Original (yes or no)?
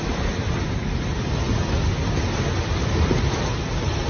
yes